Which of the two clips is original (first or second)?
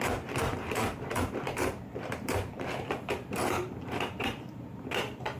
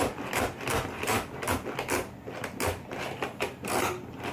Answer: second